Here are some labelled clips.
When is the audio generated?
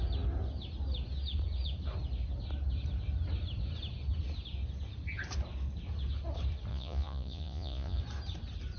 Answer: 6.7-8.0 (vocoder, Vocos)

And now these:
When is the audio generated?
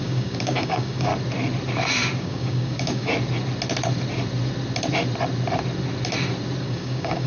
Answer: 0.0-1.1 (codec, DAC); 2.2-3.1; 6.6-7.3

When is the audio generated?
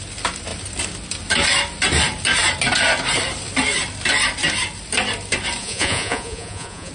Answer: 5.6-6.9 (vocoder, Vocos)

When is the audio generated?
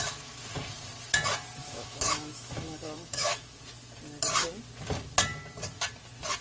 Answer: 1.6-3.6 (autoencoder, DAC-VAE)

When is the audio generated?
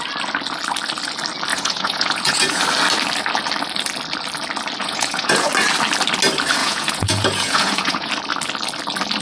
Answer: 1.5-2.6 (vocoder, Vocos); 4.8-5.5; 6.6-8.1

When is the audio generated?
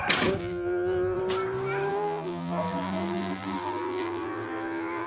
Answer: 0.4-1.2 (vocoder, BigVGAN v2); 1.9-5.1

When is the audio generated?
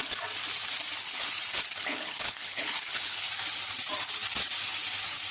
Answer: 1.0-3.3 (codec, HILCodec)